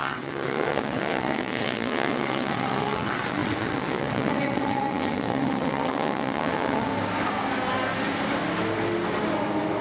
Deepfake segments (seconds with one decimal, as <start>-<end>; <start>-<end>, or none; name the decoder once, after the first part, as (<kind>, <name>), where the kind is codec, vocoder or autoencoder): 0.0-6.9 (vocoder, WaveNeXt)